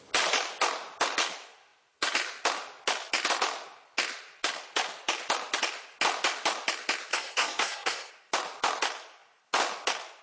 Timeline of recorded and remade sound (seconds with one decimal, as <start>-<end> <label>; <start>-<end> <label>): 0.0-7.1 recorded; 7.1-8.1 remade; 8.1-10.2 recorded